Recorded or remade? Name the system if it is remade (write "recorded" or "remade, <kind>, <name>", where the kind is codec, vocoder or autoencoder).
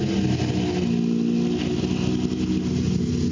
recorded